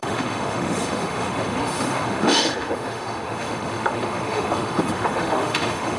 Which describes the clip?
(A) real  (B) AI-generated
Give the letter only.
B